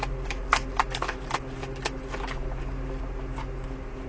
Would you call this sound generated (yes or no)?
no